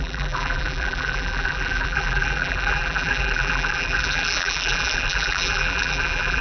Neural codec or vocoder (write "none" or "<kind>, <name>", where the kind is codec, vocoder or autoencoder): vocoder, BigVGAN v2